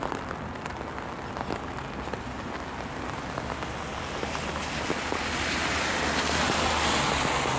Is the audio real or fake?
real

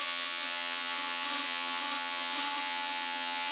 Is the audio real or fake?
fake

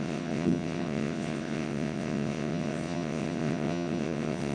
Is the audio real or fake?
fake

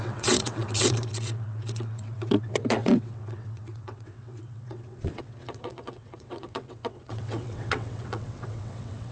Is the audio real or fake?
fake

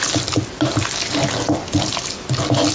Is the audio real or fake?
real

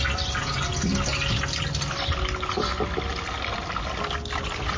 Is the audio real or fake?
real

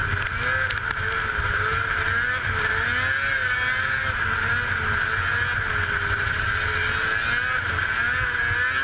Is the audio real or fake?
real